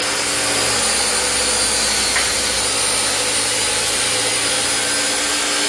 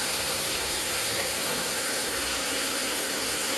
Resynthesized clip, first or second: second